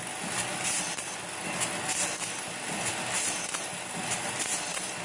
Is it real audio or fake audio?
real